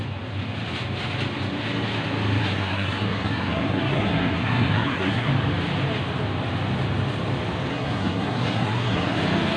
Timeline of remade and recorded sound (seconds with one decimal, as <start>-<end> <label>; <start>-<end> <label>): 0.0-2.4 recorded; 2.4-5.3 remade; 5.3-7.7 recorded; 7.7-9.2 remade; 9.2-9.6 recorded